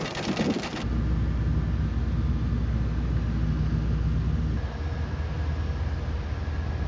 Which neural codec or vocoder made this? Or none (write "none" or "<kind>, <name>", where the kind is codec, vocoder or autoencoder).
none